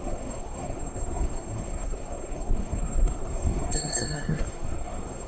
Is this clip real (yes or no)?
no